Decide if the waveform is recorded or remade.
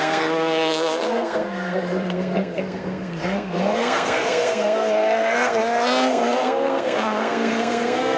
remade